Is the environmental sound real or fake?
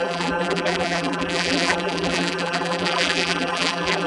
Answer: fake